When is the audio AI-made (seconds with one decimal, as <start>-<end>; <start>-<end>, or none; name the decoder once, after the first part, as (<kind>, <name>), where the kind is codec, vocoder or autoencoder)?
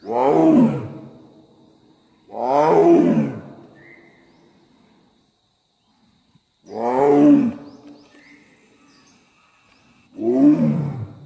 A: none